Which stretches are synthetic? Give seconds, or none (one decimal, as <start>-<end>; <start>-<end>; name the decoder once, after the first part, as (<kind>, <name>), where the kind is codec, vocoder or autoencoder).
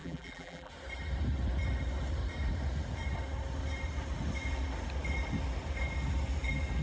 0.0-0.7 (vocoder, BigVGAN v2)